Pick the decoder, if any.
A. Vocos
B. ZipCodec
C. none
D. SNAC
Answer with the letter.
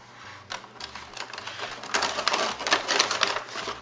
C